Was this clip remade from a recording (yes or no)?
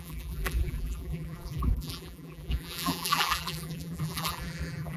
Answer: yes